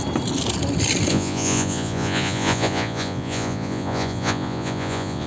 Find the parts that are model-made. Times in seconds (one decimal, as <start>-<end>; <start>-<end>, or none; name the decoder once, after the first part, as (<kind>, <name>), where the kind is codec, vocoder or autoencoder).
1.1-5.3 (vocoder, Vocos)